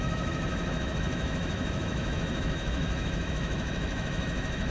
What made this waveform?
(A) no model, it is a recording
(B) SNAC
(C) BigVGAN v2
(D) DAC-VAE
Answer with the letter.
D